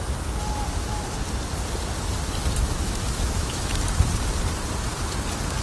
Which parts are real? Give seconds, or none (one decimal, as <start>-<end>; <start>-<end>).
0.0-2.6; 4.1-5.6